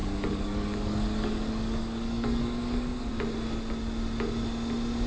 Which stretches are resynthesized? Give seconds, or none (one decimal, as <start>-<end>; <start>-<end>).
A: 0.0-3.1